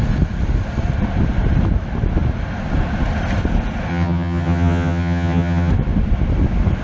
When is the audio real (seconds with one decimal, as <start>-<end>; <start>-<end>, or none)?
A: 0.0-3.9; 5.7-6.8